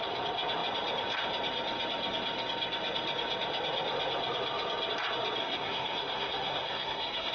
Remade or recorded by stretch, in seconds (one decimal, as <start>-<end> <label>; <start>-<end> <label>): 0.0-5.4 recorded; 5.4-7.3 remade